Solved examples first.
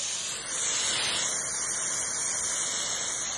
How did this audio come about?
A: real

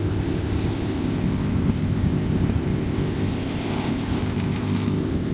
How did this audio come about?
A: fake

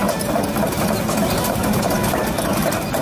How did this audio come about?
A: real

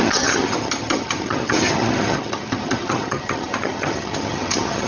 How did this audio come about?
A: fake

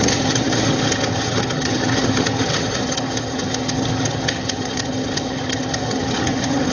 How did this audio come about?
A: fake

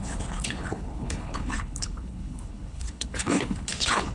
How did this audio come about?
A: fake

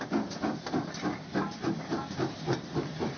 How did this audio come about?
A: real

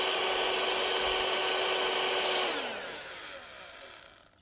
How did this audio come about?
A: real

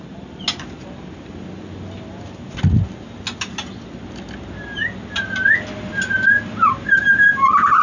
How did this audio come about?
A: real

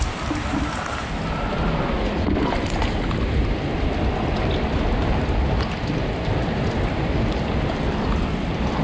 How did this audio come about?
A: real